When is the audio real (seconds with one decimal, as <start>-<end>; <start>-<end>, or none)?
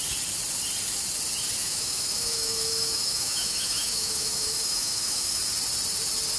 0.0-1.6; 5.4-6.4